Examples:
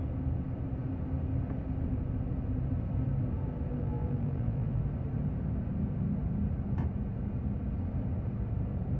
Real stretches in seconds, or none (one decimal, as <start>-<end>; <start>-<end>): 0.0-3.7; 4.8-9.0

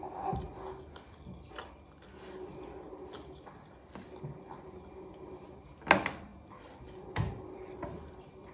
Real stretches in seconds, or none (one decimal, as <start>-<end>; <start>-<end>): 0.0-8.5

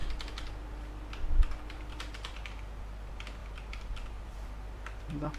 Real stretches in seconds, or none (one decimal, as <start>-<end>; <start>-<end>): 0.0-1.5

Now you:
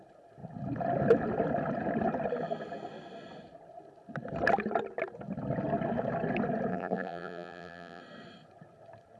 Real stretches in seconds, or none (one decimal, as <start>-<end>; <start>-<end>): 0.0-6.7; 8.0-9.2

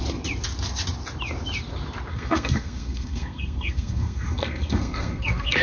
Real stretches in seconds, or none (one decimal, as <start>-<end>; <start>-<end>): 0.0-2.1

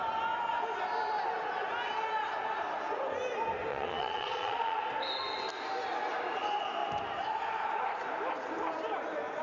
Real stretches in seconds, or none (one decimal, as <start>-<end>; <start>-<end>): 0.0-3.7; 4.8-9.4

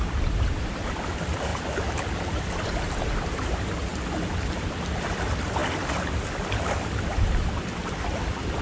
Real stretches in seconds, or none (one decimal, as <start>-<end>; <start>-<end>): 0.0-8.6

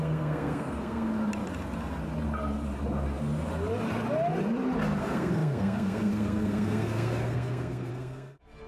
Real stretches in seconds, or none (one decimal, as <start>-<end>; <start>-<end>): 1.1-5.0